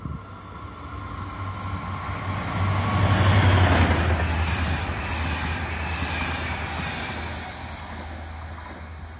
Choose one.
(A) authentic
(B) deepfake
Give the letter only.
A